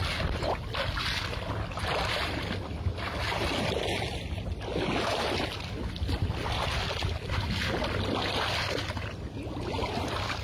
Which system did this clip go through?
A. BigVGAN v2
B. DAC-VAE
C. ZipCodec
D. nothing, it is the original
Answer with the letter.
D